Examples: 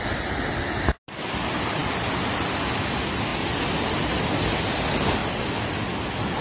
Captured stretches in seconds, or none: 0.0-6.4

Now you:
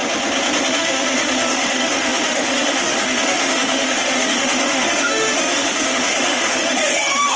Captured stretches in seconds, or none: 0.0-0.7

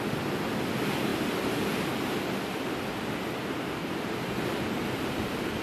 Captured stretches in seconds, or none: 0.0-5.6

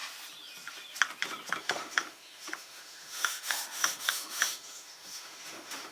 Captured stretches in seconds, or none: 0.0-1.6